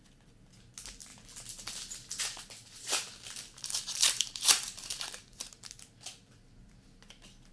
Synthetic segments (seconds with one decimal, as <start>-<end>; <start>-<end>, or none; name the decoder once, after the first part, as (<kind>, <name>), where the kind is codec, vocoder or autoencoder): 2.6-5.4 (vocoder, BigVGAN v2)